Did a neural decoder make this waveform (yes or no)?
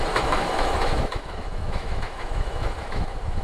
yes